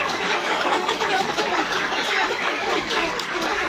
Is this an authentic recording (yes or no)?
no